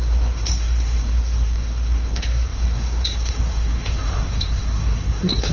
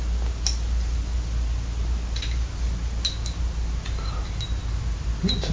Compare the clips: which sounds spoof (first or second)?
first